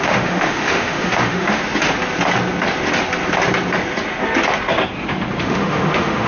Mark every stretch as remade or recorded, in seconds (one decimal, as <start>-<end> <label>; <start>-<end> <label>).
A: 0.0-1.6 remade; 1.6-5.4 recorded; 5.4-6.3 remade